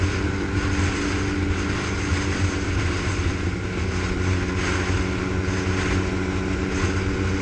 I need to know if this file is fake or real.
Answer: real